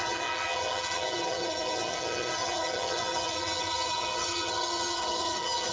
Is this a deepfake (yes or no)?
yes